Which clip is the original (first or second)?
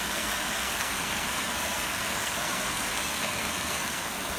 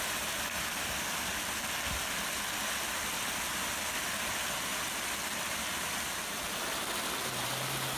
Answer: second